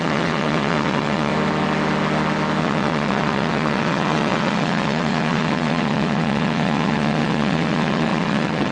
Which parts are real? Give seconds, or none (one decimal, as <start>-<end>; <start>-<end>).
1.3-2.6